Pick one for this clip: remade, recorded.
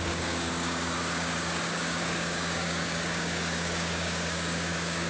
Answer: remade